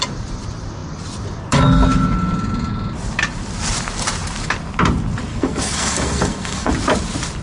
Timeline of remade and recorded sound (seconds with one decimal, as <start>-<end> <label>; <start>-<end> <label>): 0.0-5.3 recorded; 5.3-6.7 remade; 6.7-7.4 recorded